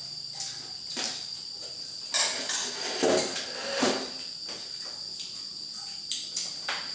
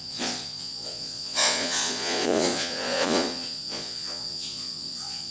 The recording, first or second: first